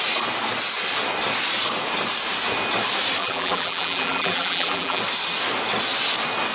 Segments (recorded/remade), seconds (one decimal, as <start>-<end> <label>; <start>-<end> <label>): 0.0-3.2 recorded; 3.2-5.0 remade; 5.0-6.5 recorded